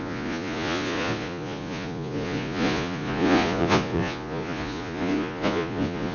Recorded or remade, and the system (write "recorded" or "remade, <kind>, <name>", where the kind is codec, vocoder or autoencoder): remade, vocoder, Vocos